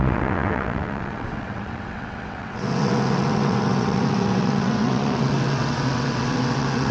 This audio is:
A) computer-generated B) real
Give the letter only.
A